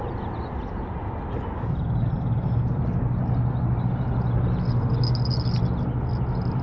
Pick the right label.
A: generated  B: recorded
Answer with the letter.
B